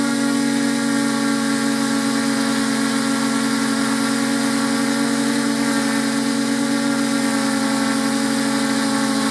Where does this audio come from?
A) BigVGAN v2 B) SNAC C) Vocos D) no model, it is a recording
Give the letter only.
D